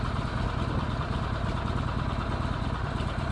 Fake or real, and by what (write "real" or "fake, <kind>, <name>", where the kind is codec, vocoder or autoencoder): real